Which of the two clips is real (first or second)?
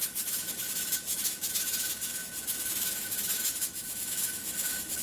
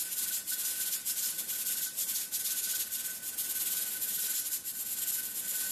second